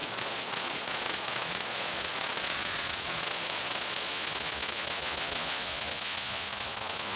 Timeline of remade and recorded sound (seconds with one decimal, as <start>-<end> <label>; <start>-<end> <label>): 0.0-4.1 remade; 4.1-7.2 recorded